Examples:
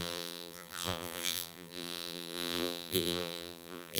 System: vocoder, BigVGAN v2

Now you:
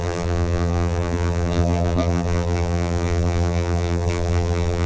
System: vocoder, BigVGAN v2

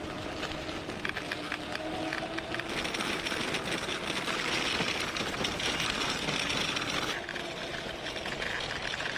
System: none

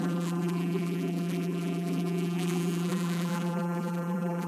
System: vocoder, BigVGAN v2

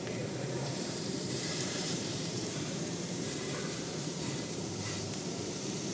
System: vocoder, BigVGAN v2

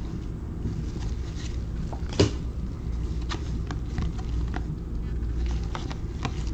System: none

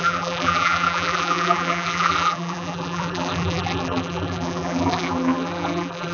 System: vocoder, BigVGAN v2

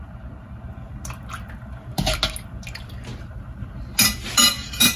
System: none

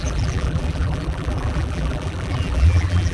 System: vocoder, BigVGAN v2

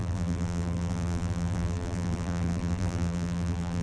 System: vocoder, BigVGAN v2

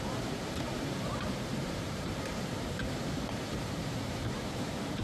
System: vocoder, BigVGAN v2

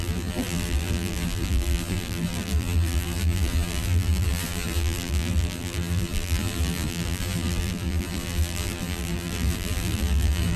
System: vocoder, BigVGAN v2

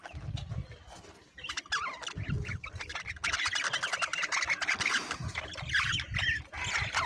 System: vocoder, BigVGAN v2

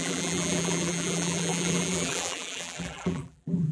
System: vocoder, BigVGAN v2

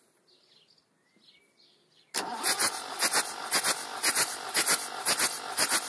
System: none